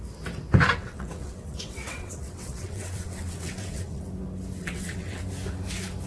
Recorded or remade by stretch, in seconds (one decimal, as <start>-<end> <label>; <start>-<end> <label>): 0.0-0.8 recorded; 0.8-4.0 remade; 4.0-4.6 recorded; 4.6-5.2 remade; 5.2-6.1 recorded